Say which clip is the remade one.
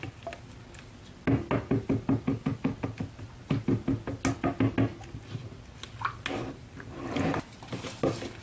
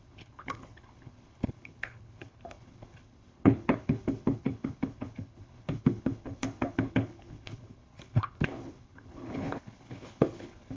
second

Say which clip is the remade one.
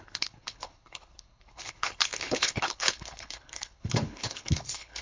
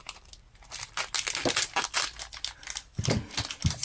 first